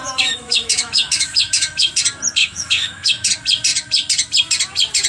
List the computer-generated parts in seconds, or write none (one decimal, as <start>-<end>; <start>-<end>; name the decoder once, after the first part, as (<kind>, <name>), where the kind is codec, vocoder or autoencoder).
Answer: 0.0-1.9 (autoencoder, DAC-VAE); 2.4-3.3